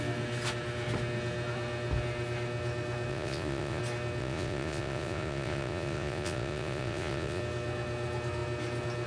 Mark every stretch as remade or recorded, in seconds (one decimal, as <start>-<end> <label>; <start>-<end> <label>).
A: 0.0-3.1 recorded; 3.1-3.8 remade; 3.8-4.2 recorded; 4.2-7.4 remade; 7.4-9.1 recorded